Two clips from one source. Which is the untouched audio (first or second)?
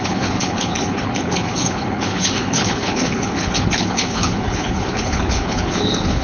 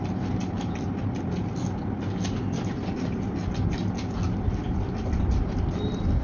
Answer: second